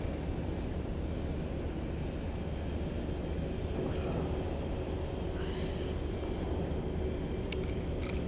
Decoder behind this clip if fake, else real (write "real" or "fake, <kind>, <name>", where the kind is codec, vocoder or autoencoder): real